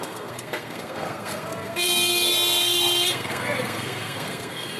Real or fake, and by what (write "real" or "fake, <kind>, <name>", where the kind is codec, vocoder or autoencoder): fake, codec, SNAC